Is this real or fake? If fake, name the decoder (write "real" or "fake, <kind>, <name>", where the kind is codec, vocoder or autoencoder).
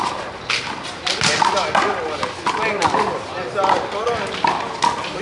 real